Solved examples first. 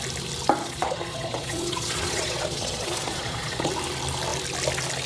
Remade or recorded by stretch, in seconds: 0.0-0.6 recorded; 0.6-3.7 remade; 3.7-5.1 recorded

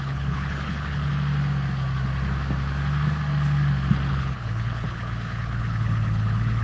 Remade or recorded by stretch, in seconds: 0.0-1.1 remade; 1.1-4.1 recorded; 4.1-6.6 remade

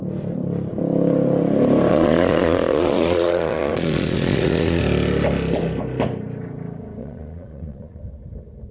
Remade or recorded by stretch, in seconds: 0.0-1.9 recorded; 1.9-4.8 remade; 4.8-7.0 recorded; 7.0-8.0 remade; 8.0-8.7 recorded

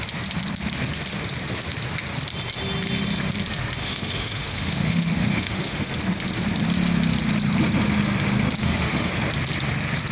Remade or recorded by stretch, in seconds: 0.0-3.8 recorded; 3.8-5.9 remade; 5.9-8.6 recorded; 8.6-9.1 remade; 9.1-10.1 recorded

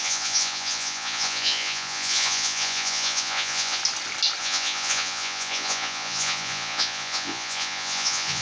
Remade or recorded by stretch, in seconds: 0.0-3.8 remade; 3.8-4.4 recorded; 4.4-8.4 remade

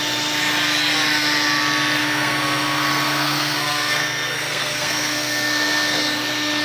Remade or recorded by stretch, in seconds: 0.0-2.0 recorded; 2.0-6.0 remade; 6.0-6.6 recorded

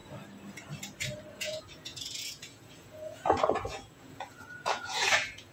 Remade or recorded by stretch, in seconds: 0.0-1.3 recorded; 1.3-5.5 remade